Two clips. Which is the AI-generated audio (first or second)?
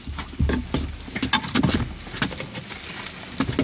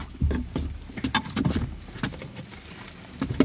second